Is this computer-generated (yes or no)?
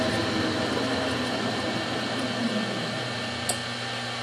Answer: no